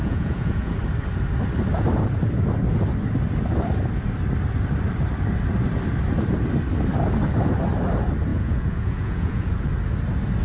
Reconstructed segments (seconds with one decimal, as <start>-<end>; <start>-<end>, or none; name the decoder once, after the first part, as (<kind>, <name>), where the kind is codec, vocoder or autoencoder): 0.0-0.7 (vocoder, Vocos); 8.3-9.7